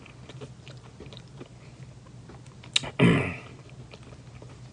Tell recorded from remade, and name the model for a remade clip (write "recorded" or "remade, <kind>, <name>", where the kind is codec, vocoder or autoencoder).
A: recorded